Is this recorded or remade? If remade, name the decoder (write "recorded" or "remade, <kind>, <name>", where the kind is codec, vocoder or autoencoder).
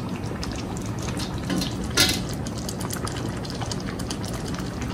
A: recorded